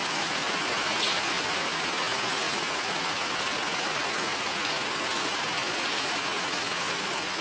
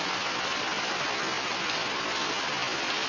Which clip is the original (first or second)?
second